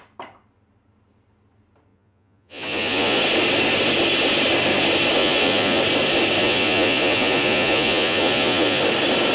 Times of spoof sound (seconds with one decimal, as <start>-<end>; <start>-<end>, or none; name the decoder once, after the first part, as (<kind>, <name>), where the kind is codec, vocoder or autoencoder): 1.9-3.2 (vocoder, Vocos); 5.2-5.8; 6.4-8.8